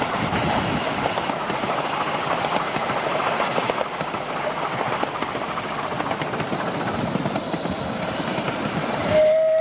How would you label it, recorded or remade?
recorded